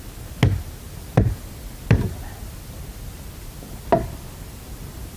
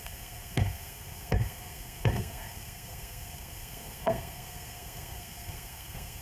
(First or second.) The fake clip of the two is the second